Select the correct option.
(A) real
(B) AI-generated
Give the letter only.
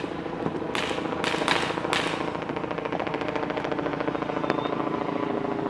A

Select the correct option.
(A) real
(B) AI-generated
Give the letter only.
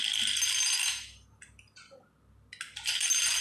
A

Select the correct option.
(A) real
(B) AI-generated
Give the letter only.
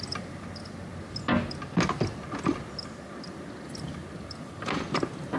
A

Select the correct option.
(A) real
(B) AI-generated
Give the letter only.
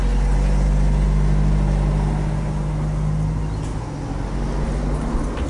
A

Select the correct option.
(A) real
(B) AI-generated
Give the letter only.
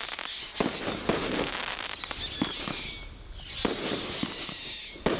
A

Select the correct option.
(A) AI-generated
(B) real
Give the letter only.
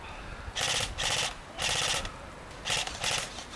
B